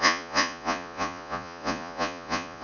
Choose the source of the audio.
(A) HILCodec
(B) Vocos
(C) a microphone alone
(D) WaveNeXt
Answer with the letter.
B